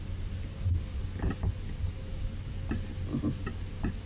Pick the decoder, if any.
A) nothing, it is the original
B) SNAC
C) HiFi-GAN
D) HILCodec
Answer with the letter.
A